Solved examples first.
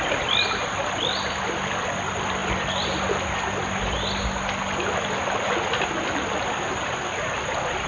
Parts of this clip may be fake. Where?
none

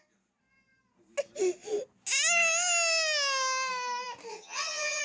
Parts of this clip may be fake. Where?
4.3-5.0 (vocoder, HiFi-GAN)

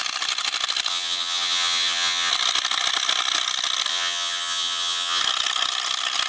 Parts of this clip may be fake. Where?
0.9-2.3 (vocoder, HiFi-GAN); 3.9-5.2

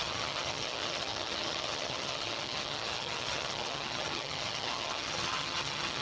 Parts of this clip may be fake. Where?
0.0-6.0 (vocoder, HiFi-GAN)